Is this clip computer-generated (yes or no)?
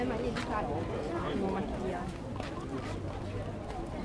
no